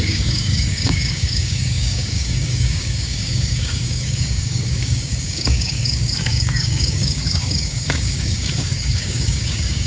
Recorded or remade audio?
remade